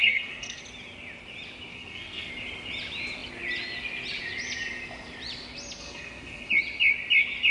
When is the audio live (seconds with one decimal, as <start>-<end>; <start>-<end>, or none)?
0.6-1.7; 2.3-5.8; 6.5-7.5